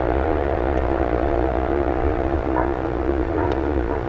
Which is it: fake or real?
fake